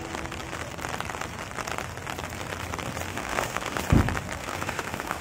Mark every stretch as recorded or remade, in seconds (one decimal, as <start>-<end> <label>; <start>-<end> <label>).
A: 0.0-3.1 recorded; 3.1-3.8 remade; 3.8-4.4 recorded; 4.4-5.2 remade